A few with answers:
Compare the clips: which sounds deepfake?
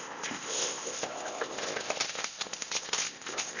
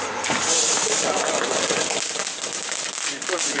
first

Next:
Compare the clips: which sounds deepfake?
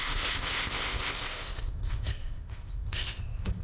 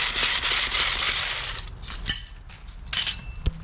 first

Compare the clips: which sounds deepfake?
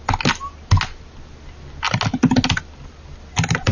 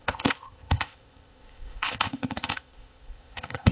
second